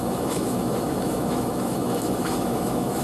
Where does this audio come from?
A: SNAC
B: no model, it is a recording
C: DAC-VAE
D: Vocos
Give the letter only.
C